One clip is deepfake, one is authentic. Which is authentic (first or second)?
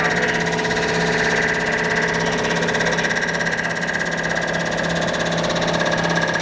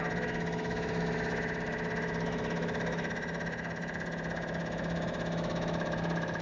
first